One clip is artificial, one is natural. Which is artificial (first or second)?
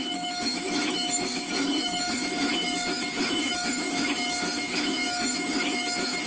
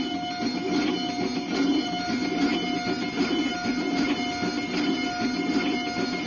first